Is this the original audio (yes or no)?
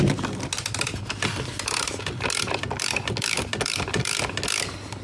yes